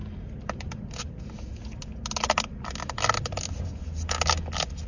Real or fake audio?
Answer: real